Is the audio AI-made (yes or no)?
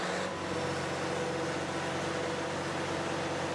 no